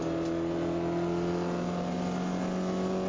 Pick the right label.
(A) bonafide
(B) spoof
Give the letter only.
A